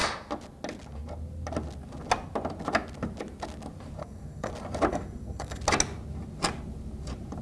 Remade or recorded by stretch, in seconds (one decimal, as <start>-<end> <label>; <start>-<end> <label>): 0.0-4.0 recorded; 4.0-4.5 remade; 4.5-4.9 recorded; 4.9-5.6 remade; 5.6-7.4 recorded